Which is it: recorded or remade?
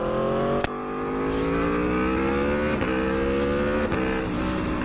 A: recorded